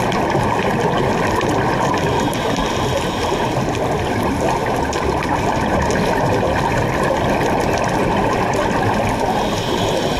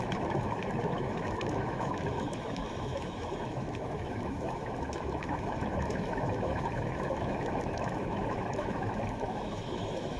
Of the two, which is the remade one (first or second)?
second